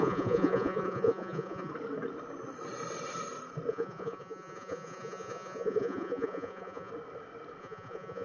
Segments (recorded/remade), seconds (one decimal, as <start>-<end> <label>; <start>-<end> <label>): 0.0-1.7 remade; 1.7-3.7 recorded; 3.7-6.9 remade; 6.9-7.6 recorded; 7.6-8.2 remade